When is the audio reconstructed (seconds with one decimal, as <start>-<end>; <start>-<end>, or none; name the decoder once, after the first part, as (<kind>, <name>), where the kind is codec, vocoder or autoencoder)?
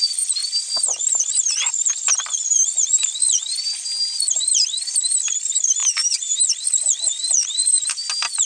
5.8-6.4 (vocoder, BigVGAN v2)